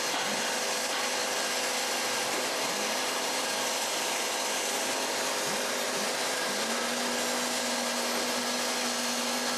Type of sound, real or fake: real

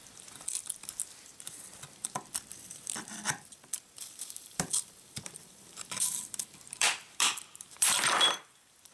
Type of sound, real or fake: fake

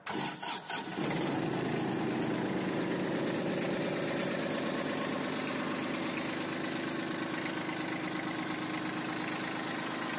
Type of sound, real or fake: real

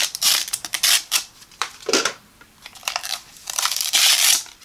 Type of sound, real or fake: fake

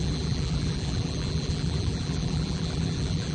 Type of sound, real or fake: fake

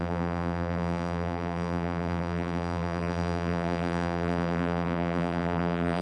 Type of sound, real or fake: fake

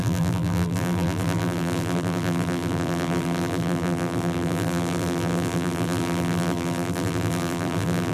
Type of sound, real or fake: fake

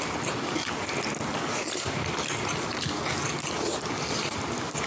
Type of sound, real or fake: real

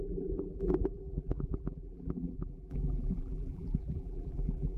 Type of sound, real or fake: fake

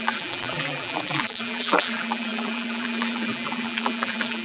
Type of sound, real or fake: fake